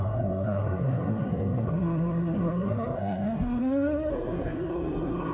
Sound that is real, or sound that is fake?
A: fake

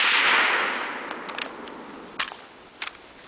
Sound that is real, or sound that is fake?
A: real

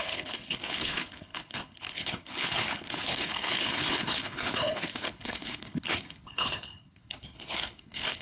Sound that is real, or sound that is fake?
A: fake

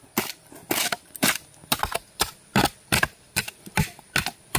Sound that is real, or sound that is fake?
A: real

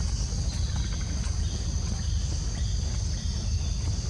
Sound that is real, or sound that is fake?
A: real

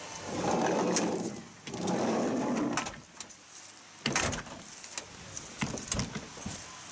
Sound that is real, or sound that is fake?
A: real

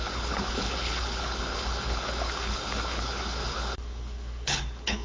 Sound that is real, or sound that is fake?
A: fake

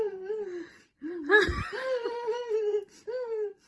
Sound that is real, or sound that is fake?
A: fake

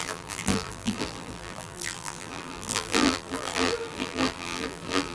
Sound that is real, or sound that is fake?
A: fake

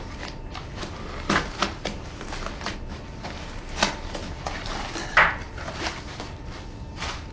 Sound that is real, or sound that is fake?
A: real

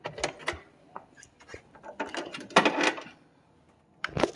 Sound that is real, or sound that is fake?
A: real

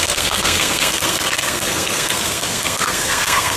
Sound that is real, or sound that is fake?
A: fake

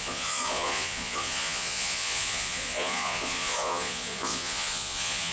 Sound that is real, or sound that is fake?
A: fake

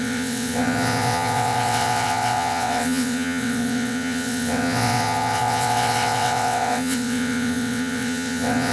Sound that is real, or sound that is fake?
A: fake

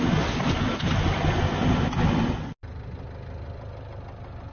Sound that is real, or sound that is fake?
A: real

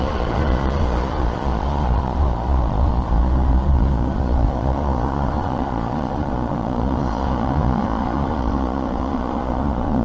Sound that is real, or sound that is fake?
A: fake